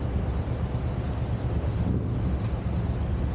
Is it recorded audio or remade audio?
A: recorded